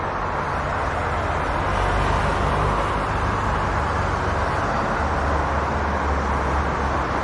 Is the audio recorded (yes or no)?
yes